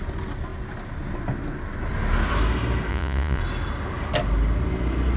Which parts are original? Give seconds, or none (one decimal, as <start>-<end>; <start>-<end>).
0.0-2.9; 3.4-5.2

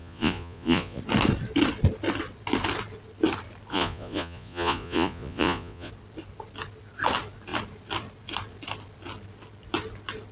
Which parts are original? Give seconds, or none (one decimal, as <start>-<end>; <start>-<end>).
1.0-3.7; 5.9-10.3